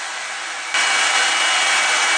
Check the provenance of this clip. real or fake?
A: real